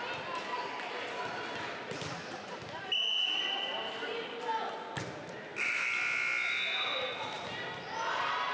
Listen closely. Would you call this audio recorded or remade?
recorded